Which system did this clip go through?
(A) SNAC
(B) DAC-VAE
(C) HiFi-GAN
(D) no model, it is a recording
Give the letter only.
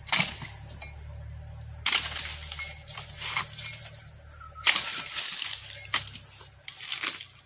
D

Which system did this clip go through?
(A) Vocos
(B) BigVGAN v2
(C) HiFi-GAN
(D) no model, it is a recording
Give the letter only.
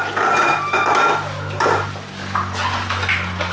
D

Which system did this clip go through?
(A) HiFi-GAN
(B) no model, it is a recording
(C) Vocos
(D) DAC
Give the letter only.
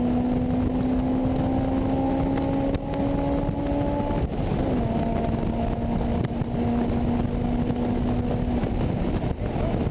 B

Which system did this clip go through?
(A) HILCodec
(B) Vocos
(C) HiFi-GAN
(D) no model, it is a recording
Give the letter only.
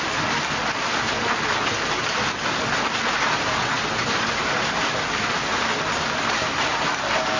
D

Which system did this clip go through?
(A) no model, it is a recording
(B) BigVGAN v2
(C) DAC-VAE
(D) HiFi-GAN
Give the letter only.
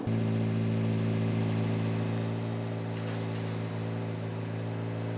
A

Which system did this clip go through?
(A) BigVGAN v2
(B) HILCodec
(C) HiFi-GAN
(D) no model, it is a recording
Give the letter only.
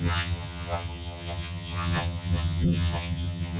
C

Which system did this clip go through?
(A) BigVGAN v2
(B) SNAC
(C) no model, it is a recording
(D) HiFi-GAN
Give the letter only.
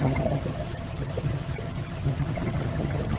D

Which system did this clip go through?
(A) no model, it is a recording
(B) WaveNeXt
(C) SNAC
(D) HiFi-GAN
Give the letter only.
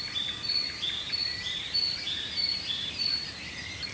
A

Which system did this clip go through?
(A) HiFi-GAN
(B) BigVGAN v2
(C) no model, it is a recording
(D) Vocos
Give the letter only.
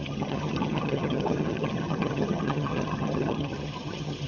A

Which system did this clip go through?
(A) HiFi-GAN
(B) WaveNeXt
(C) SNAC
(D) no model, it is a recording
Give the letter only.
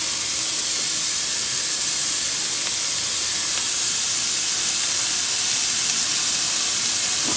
D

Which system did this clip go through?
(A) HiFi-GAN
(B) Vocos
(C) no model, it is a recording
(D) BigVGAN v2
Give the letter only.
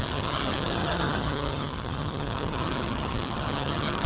A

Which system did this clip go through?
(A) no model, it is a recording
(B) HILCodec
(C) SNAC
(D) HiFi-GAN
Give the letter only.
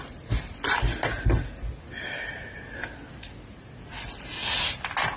A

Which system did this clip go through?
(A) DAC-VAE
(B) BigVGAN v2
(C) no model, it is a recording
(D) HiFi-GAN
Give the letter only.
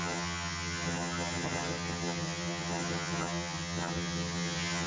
D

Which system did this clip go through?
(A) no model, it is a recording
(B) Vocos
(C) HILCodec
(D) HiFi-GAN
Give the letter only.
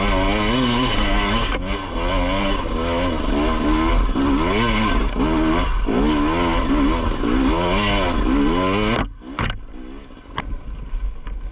A